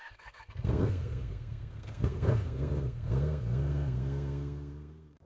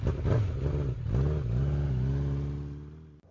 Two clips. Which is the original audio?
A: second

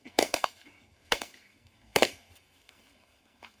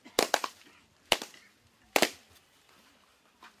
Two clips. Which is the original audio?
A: second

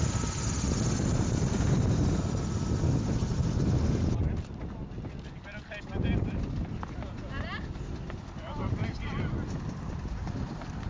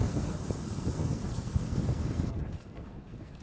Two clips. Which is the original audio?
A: first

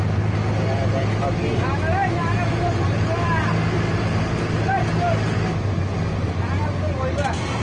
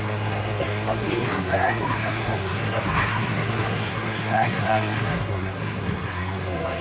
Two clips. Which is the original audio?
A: first